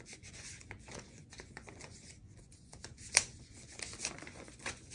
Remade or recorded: remade